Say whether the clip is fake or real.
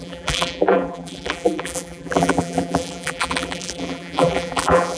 fake